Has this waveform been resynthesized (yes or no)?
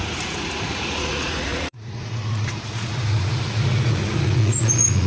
yes